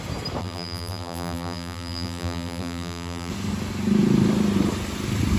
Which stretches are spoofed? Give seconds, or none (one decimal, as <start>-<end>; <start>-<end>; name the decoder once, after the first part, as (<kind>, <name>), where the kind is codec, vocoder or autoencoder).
0.4-3.3 (vocoder, BigVGAN v2)